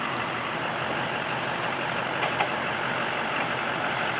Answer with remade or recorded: recorded